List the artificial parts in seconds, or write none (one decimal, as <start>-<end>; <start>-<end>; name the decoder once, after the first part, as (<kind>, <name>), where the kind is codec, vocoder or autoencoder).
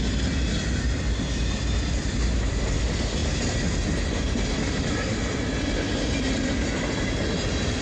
none